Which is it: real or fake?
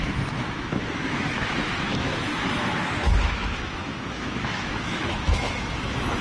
fake